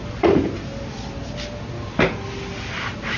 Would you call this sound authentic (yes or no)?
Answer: yes